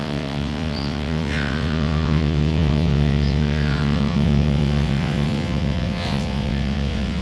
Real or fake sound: fake